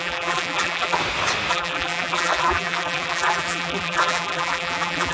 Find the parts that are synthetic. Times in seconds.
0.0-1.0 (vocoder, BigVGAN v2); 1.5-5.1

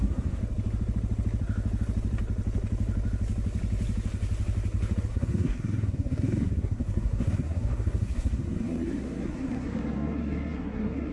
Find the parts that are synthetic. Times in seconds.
0.0-0.4 (codec, SNAC); 5.1-11.1

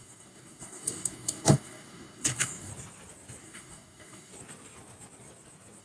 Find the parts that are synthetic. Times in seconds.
0.0-2.7 (codec, DAC); 3.4-4.3

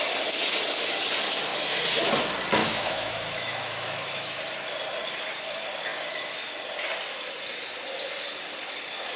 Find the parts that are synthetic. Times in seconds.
2.6-4.4 (autoencoder, DAC-VAE)